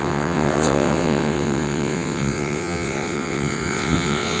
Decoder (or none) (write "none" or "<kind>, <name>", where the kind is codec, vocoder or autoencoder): vocoder, WaveNeXt